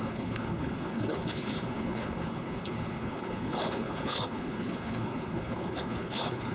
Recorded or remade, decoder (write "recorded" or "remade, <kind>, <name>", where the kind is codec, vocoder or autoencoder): remade, codec, HILCodec